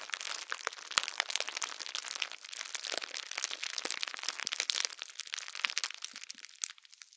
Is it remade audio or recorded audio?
recorded